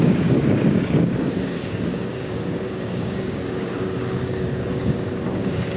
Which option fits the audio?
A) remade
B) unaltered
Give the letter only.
A